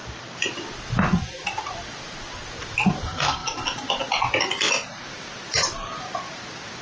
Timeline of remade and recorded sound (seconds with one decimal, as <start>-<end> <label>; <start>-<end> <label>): 0.0-3.4 remade; 3.4-6.8 recorded